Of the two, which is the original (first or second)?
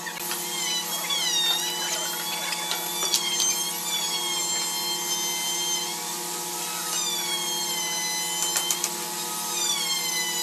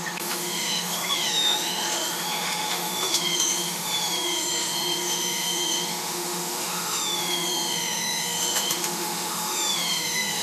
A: first